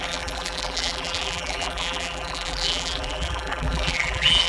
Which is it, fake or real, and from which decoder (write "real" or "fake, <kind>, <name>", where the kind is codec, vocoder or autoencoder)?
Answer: fake, vocoder, BigVGAN v2